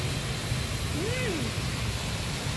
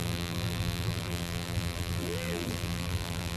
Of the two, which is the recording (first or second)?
first